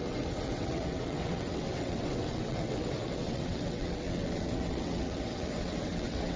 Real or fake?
fake